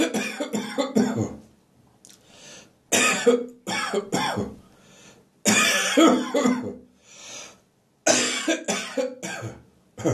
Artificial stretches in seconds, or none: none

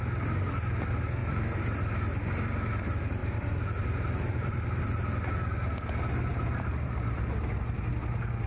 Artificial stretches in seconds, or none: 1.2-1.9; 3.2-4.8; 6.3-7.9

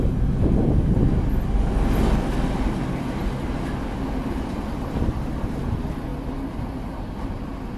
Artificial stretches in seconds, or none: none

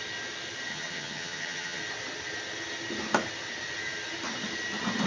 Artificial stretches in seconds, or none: 0.7-1.8

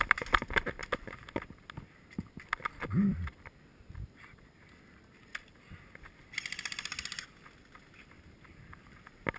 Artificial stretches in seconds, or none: none